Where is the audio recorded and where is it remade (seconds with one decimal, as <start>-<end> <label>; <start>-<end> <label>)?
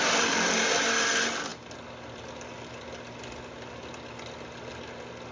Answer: 0.0-5.3 recorded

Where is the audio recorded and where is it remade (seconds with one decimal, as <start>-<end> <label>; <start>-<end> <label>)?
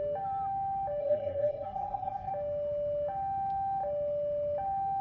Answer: 0.0-1.0 recorded; 1.0-2.3 remade; 2.3-5.0 recorded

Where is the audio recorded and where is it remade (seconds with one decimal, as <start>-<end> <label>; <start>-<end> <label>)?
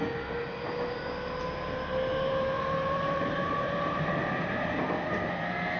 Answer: 0.0-2.1 recorded; 2.1-5.8 remade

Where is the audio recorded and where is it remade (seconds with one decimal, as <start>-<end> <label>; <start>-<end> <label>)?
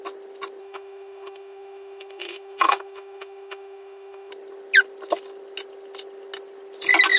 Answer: 0.0-0.6 recorded; 0.6-4.3 remade; 4.3-7.2 recorded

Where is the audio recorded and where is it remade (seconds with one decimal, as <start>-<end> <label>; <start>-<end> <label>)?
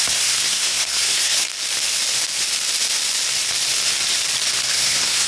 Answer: 0.0-1.5 remade; 1.5-4.7 recorded; 4.7-5.3 remade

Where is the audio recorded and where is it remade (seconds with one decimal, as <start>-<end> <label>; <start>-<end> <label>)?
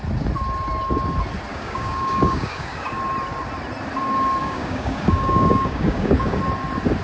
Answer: 0.0-1.5 recorded; 1.5-3.0 remade; 3.0-4.4 recorded; 4.4-6.4 remade; 6.4-7.0 recorded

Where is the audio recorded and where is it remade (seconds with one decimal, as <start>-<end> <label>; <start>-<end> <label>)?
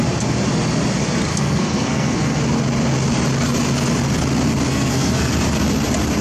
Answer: 0.0-1.3 recorded; 1.3-2.4 remade; 2.4-4.7 recorded; 4.7-5.3 remade; 5.3-6.2 recorded